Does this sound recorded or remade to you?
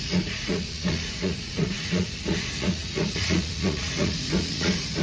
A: remade